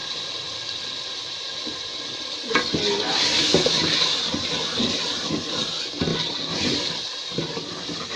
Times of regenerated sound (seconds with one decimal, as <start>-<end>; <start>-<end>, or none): none